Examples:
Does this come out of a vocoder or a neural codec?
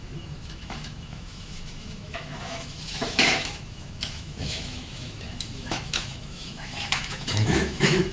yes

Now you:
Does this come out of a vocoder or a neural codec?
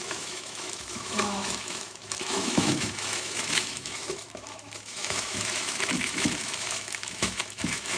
yes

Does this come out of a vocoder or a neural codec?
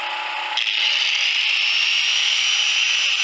no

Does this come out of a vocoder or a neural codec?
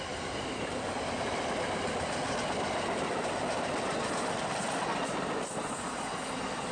no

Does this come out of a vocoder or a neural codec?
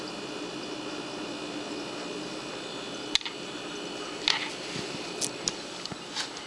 no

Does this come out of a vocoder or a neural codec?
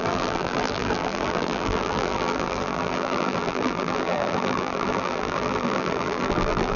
yes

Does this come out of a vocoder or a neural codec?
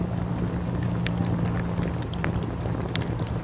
no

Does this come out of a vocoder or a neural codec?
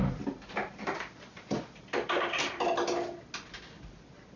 no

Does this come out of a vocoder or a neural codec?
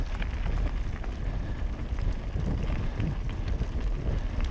no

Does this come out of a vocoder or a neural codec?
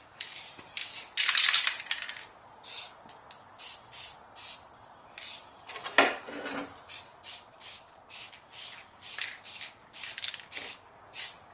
no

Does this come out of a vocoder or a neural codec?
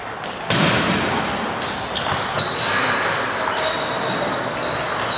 no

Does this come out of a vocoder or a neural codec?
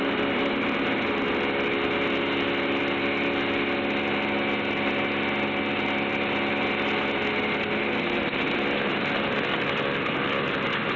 no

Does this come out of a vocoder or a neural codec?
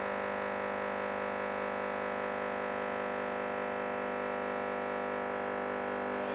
no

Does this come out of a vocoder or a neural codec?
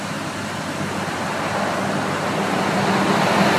no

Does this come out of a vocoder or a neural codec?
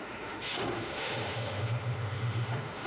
yes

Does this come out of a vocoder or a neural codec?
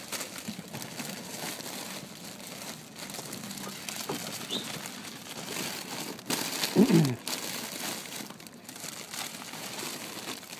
no